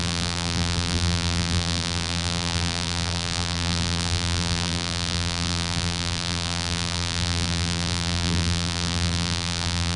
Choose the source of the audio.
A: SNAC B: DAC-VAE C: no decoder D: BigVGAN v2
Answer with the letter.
D